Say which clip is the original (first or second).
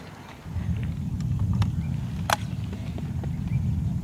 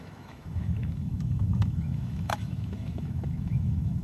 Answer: first